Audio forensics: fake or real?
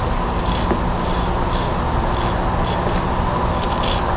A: real